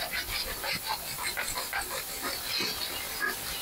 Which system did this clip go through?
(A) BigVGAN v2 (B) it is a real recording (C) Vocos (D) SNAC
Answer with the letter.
B